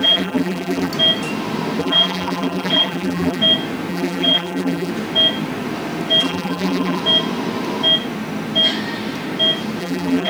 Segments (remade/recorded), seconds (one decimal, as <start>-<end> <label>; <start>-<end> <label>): 0.0-0.9 remade; 0.9-1.8 recorded; 1.8-3.4 remade; 3.4-3.9 recorded; 3.9-4.9 remade; 4.9-6.2 recorded; 6.2-7.0 remade; 7.0-9.8 recorded; 9.8-10.3 remade